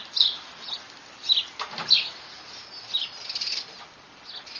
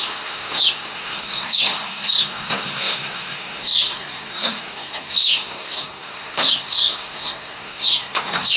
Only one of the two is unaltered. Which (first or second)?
first